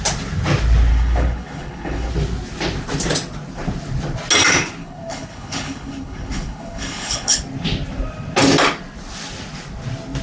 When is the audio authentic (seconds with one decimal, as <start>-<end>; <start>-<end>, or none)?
0.0-0.9; 2.1-4.8; 7.4-10.2